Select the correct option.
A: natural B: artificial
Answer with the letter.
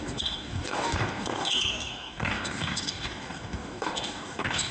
B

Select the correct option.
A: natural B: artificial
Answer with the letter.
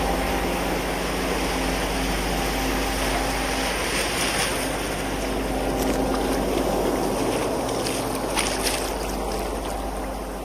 A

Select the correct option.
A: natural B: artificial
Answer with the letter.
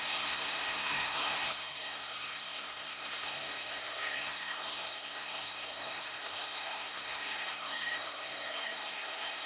B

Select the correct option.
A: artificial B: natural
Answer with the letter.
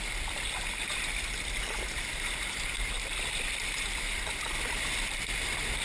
A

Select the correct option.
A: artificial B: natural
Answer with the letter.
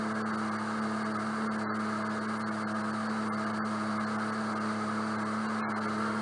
B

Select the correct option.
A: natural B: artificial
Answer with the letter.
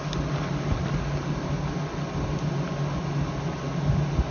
A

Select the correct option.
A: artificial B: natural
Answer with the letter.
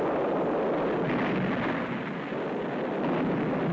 B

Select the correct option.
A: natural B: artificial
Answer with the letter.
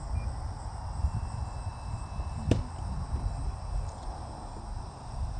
A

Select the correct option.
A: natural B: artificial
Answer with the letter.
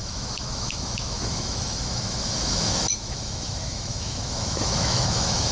B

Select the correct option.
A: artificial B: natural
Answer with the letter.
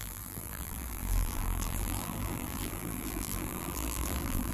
A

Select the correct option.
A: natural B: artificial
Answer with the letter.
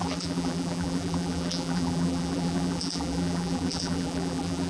B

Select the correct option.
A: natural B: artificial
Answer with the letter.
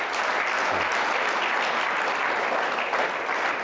A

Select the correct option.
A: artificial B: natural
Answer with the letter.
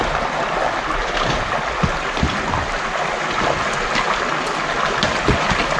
B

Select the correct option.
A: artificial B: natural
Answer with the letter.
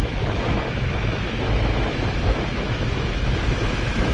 A